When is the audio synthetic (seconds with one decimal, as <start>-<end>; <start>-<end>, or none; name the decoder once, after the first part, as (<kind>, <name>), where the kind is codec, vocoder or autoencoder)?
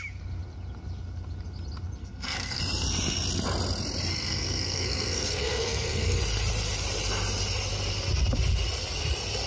2.0-2.6 (codec, SNAC); 4.1-6.2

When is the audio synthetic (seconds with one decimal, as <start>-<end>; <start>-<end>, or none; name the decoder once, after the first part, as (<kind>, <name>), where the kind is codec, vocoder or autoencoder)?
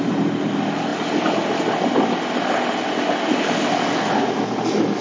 none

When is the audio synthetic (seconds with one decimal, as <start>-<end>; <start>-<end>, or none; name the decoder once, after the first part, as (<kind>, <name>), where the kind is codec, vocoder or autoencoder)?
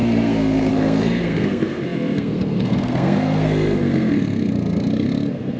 0.0-5.6 (codec, SNAC)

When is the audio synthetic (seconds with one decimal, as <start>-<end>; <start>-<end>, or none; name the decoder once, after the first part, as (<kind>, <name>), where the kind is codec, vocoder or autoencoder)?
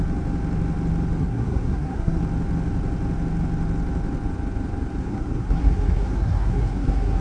1.2-2.2 (codec, SNAC); 5.0-7.2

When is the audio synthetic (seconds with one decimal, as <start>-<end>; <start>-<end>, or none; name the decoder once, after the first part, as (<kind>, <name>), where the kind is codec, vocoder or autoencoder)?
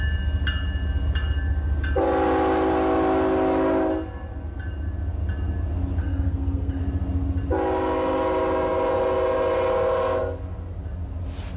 6.0-6.8 (codec, SNAC)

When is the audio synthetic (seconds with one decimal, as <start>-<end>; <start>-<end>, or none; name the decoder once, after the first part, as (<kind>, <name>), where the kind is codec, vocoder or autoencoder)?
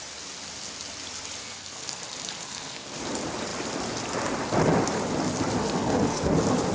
1.4-2.0 (codec, SNAC); 2.4-3.0; 5.6-6.3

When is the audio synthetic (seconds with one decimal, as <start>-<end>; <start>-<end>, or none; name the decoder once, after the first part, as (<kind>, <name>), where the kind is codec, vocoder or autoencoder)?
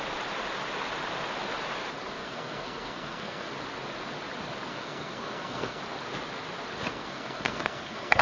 2.2-3.5 (codec, SNAC); 4.7-5.8; 6.9-8.2